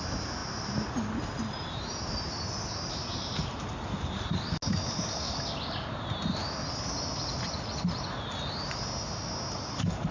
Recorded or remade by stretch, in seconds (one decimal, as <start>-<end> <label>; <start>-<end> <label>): 0.0-10.1 recorded